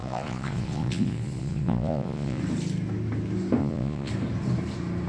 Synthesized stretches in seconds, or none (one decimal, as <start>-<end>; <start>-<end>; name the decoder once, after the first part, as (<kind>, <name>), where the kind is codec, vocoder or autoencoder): 0.0-2.4 (vocoder, Vocos); 3.6-4.1